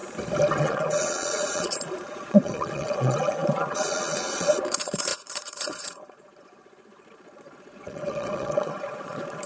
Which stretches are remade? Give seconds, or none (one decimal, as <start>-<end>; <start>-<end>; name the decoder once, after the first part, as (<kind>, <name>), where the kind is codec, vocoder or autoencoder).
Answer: 0.6-9.5 (vocoder, Vocos)